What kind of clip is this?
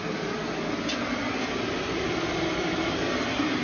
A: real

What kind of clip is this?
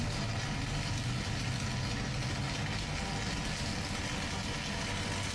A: real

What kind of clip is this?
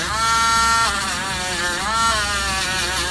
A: real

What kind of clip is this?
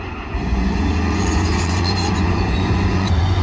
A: fake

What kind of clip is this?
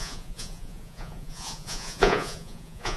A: fake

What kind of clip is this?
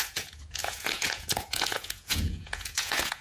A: fake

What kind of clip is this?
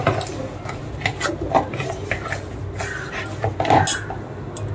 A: real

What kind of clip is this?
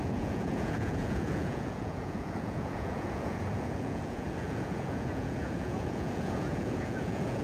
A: fake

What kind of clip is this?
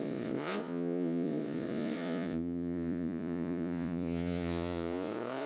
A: fake